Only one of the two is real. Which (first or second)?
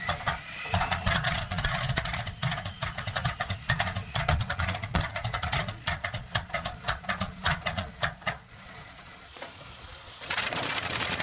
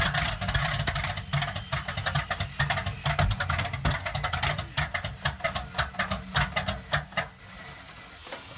second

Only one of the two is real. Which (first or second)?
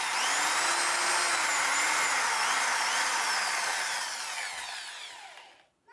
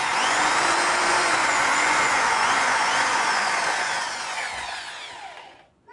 first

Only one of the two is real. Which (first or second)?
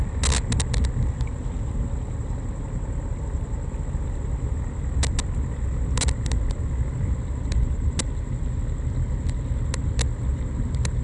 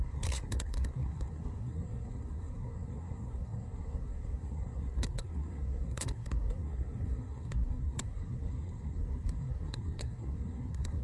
first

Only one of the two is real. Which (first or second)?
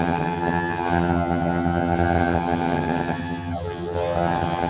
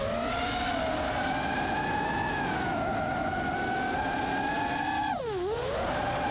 second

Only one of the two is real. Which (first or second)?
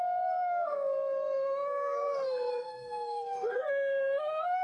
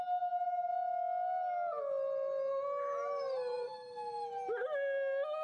second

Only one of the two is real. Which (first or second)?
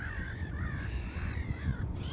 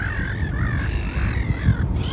second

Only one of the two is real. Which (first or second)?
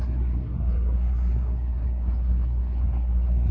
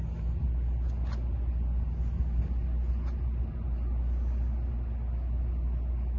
second